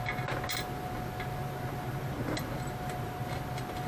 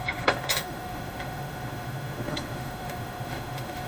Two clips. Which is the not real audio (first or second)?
second